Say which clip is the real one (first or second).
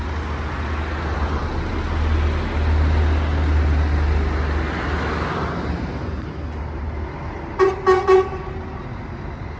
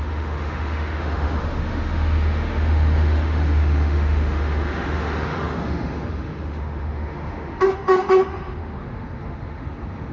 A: first